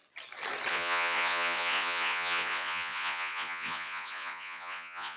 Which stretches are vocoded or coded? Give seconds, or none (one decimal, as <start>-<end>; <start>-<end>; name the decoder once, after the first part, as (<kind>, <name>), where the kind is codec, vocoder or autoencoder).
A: 0.7-5.2 (vocoder, Vocos)